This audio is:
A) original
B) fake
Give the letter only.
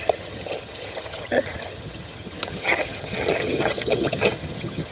B